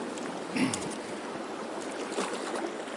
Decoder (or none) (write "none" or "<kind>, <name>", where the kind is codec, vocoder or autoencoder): none